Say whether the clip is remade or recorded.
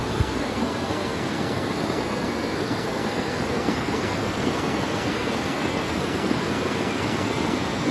remade